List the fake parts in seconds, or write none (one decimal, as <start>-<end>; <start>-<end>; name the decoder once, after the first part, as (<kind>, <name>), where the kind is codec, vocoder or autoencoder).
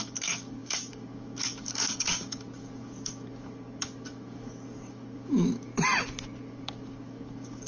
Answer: 0.0-5.7 (codec, DAC); 6.4-7.7